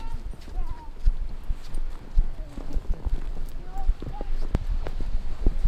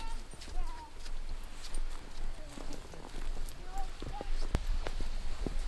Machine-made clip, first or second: first